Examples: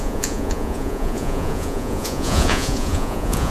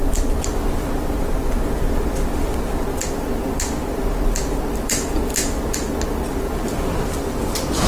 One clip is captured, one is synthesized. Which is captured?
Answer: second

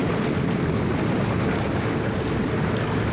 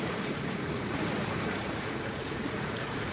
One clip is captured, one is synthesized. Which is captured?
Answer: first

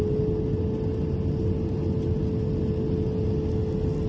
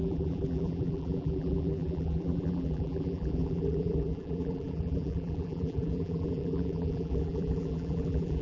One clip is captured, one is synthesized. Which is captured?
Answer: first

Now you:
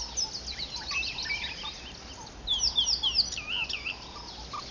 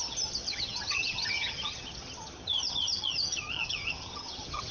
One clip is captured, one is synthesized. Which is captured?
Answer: first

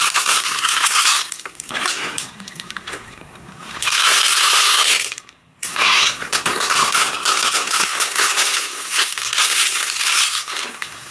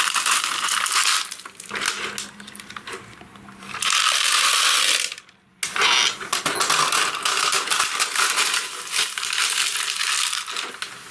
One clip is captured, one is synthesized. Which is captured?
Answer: second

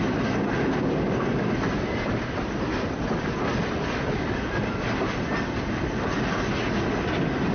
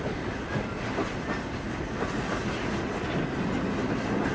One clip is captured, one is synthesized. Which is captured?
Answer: first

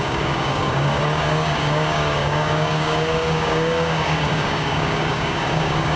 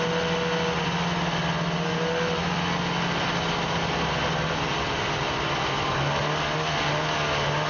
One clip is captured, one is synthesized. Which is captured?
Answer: second